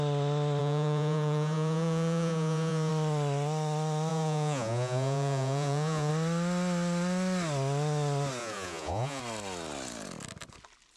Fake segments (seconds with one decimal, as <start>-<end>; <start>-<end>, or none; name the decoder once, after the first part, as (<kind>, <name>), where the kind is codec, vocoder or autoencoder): 0.6-2.9 (vocoder, Vocos); 4.1-6.1; 8.4-9.2